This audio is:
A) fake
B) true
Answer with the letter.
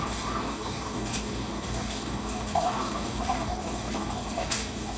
A